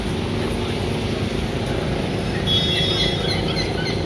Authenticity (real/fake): real